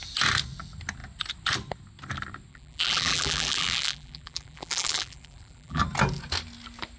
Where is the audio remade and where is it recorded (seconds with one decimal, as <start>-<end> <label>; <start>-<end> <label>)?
0.0-2.5 recorded; 2.5-5.8 remade; 5.8-7.0 recorded